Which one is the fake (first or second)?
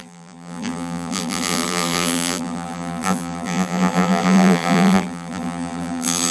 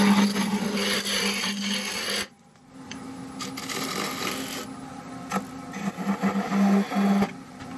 first